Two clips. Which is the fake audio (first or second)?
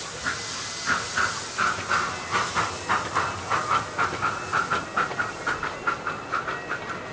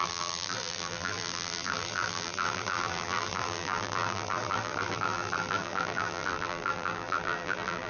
second